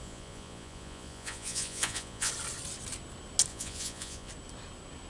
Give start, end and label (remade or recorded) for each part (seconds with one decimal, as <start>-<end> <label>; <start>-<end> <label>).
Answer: 0.0-2.3 remade; 2.3-3.5 recorded; 3.5-4.3 remade; 4.3-5.1 recorded